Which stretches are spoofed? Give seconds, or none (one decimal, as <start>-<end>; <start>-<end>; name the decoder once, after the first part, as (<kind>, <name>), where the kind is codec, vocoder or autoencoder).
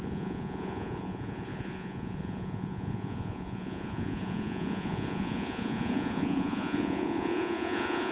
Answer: 0.0-8.1 (vocoder, Vocos)